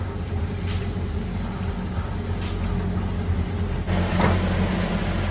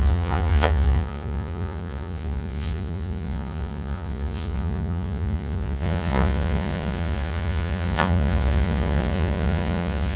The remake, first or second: second